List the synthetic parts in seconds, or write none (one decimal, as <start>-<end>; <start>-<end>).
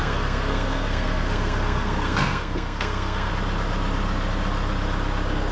0.0-3.3